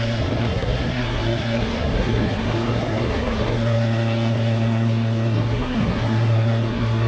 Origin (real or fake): fake